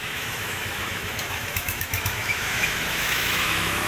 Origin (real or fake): fake